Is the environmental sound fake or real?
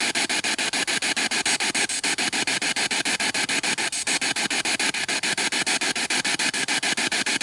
real